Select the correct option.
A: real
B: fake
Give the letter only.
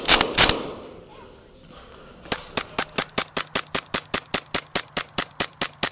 A